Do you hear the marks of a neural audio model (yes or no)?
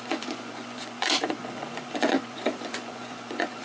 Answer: yes